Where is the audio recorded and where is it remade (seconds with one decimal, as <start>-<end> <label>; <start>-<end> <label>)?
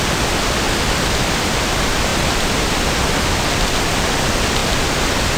0.0-5.4 recorded